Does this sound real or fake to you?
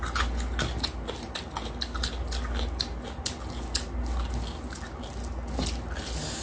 real